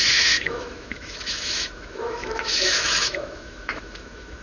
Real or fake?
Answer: fake